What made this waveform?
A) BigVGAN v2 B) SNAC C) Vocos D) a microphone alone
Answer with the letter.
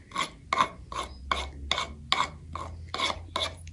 D